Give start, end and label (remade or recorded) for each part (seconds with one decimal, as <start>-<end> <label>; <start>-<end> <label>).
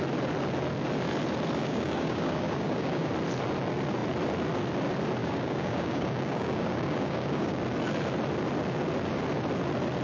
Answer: 0.0-1.6 recorded; 1.6-3.1 remade; 3.1-5.2 recorded; 5.2-7.6 remade; 7.6-10.0 recorded